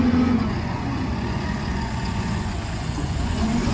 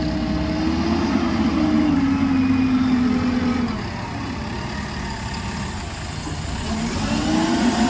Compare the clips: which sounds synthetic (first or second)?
first